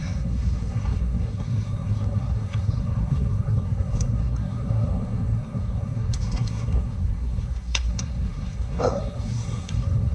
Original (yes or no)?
no